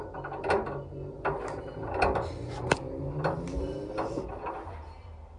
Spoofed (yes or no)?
no